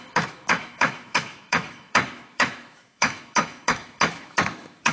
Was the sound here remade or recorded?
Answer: remade